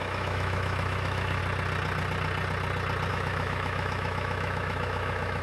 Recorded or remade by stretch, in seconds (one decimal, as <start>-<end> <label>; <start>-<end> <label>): 0.0-1.4 remade; 1.4-3.1 recorded; 3.1-5.4 remade